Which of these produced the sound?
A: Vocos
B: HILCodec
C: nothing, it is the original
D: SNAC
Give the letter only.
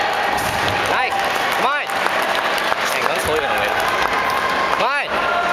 C